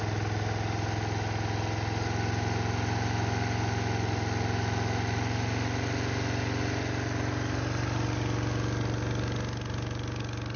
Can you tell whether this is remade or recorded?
recorded